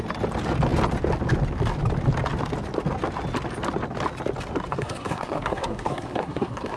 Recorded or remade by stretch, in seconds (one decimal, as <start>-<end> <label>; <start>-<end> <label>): 0.0-4.7 recorded; 4.7-6.8 remade

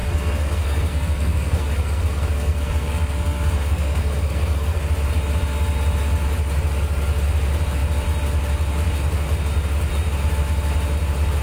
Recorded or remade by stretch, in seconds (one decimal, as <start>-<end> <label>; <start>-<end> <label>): 0.0-4.8 remade; 4.8-11.4 recorded